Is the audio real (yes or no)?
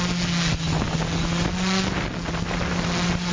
yes